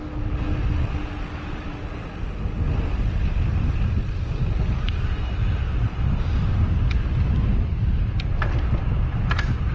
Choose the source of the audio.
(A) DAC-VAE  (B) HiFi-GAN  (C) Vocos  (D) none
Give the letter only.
D